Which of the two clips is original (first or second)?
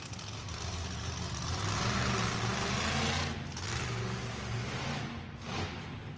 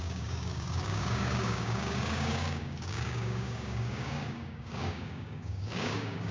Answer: first